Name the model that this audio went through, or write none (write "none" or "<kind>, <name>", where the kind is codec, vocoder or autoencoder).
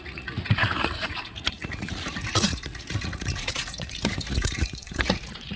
vocoder, Vocos